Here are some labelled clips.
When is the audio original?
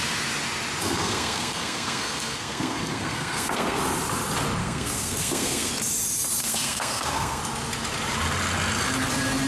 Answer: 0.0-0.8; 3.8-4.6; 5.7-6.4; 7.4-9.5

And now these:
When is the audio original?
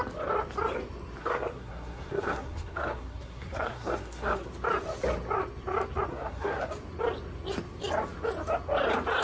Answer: 0.0-1.2; 4.5-6.1; 6.7-9.2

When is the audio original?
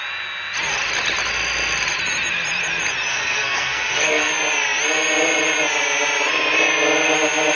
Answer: 0.0-3.1; 4.3-7.6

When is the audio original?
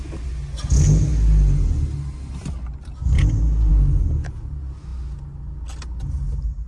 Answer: 0.0-6.7